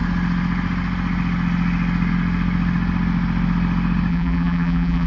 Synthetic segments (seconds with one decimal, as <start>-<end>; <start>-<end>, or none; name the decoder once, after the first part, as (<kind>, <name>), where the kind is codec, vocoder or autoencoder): 4.1-5.1 (vocoder, BigVGAN v2)